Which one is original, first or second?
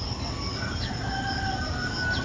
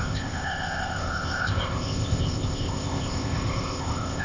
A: first